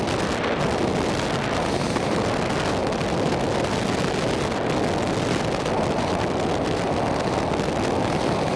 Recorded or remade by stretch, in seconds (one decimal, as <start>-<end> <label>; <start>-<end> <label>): 0.0-8.6 recorded